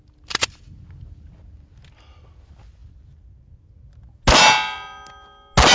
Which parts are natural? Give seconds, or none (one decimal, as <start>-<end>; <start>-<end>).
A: 0.0-5.7

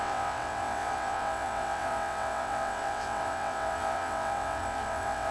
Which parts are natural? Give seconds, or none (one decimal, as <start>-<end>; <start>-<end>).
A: none

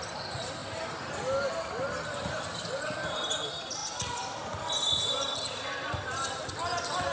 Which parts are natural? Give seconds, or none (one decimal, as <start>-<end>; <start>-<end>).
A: 0.0-7.1

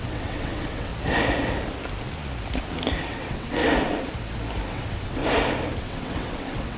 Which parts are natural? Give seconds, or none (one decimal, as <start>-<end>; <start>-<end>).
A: 0.9-3.0; 3.6-4.7; 5.2-5.8

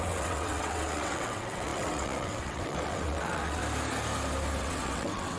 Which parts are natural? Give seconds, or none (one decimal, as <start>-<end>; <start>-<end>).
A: 3.6-4.6

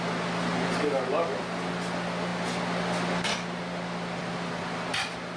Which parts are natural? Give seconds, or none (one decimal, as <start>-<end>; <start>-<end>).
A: 0.0-5.4

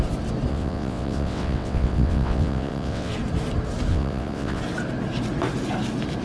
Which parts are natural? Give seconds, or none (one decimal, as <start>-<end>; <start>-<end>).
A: 0.0-0.5; 3.1-3.9; 4.6-6.2

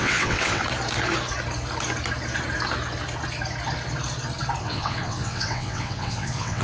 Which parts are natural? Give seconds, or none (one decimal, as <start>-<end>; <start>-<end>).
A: 0.6-4.6